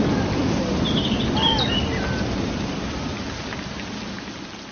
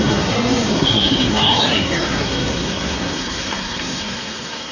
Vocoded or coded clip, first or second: second